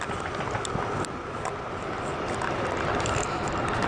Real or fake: real